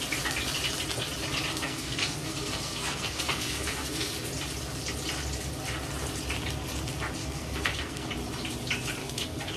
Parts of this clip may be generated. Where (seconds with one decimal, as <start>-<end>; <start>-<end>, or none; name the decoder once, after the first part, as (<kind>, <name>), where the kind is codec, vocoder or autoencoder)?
1.5-4.1 (codec, SNAC); 7.2-8.1; 9.0-9.6